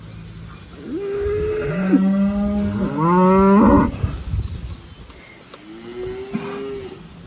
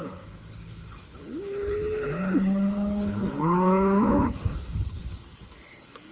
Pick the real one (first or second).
first